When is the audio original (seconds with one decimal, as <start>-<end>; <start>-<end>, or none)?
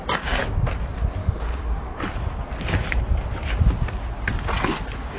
0.0-1.2; 1.8-5.2